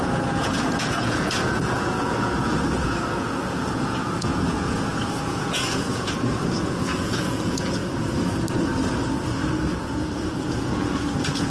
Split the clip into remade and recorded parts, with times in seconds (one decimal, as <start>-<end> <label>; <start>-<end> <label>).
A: 0.0-7.8 remade; 7.8-9.8 recorded; 9.8-11.5 remade